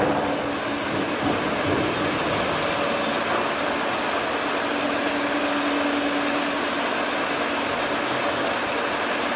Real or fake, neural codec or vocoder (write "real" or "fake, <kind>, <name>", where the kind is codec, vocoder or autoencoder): real